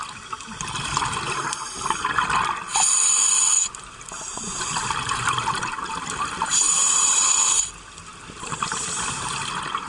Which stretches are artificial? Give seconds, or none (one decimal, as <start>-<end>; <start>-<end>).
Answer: 4.3-8.0